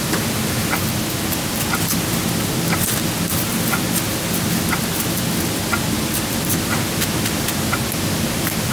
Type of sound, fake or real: real